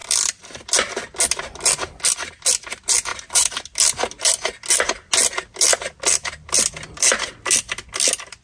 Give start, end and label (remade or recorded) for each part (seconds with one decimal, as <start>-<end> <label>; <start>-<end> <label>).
0.0-3.1 recorded; 3.1-3.6 remade; 3.6-8.4 recorded

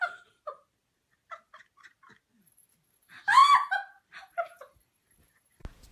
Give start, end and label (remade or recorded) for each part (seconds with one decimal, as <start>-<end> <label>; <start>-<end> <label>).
0.0-5.9 recorded

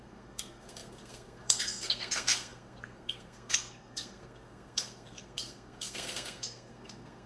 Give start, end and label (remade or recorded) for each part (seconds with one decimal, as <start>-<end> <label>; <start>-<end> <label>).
0.0-7.3 remade

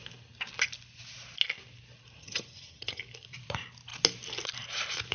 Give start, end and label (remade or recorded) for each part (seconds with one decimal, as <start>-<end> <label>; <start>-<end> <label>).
0.0-2.2 recorded; 2.2-3.0 remade; 3.0-5.1 recorded